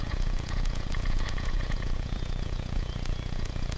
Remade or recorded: remade